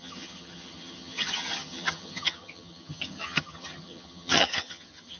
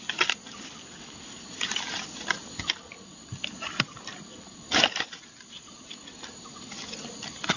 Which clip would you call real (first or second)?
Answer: second